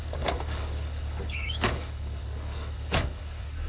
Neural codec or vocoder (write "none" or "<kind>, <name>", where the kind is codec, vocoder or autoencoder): codec, DAC